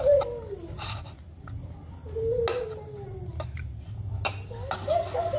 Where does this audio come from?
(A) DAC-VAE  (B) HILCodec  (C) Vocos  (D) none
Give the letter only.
D